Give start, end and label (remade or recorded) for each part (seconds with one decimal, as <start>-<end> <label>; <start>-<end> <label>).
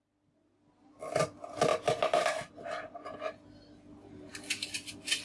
0.0-5.2 recorded